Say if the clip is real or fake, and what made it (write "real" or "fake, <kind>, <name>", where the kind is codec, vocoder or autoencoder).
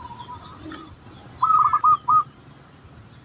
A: real